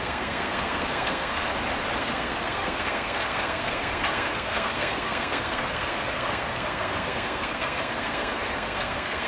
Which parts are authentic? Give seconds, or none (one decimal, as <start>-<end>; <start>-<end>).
1.4-2.0